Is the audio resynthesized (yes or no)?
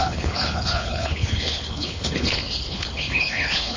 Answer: yes